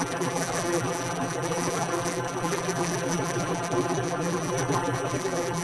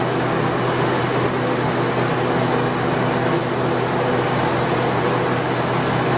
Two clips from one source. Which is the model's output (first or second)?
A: first